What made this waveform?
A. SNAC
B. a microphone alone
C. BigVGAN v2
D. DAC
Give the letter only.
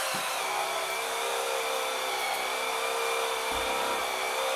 B